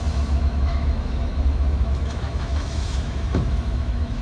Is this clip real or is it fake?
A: fake